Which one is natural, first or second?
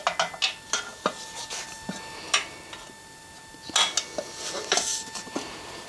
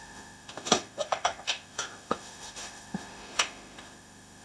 first